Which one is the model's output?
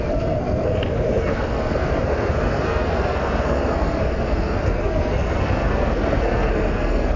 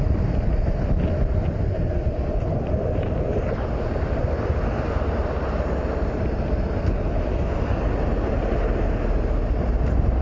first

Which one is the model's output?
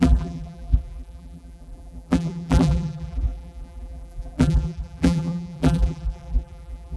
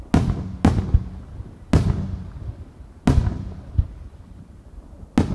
first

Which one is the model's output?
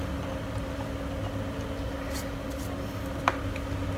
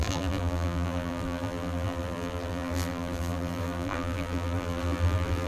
second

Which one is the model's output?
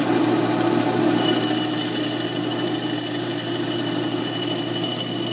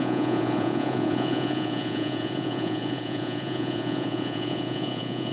second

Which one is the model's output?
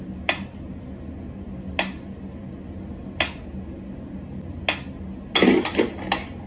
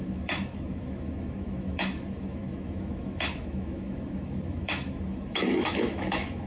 second